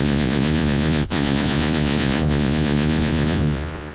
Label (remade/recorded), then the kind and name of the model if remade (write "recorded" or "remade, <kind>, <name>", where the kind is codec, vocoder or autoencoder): remade, vocoder, Vocos